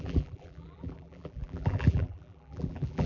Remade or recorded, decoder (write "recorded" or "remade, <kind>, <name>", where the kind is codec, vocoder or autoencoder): remade, vocoder, BigVGAN v2